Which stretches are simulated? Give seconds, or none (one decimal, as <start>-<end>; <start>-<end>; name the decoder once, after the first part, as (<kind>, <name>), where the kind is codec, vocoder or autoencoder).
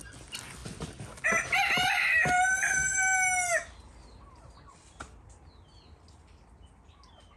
none